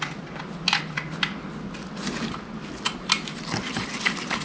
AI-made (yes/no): no